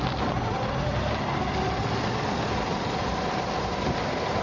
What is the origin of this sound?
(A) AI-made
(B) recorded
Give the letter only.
B